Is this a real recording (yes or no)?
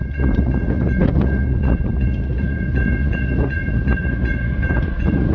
no